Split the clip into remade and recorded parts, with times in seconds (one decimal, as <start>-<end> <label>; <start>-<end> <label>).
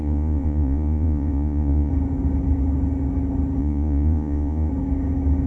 0.0-1.9 remade; 1.9-3.6 recorded; 3.6-4.7 remade; 4.7-5.5 recorded